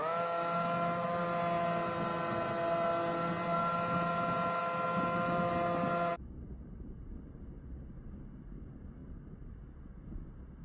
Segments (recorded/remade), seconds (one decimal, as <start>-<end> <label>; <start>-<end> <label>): 0.0-6.1 recorded; 6.1-7.1 remade; 7.1-9.0 recorded; 9.0-9.6 remade; 9.6-10.6 recorded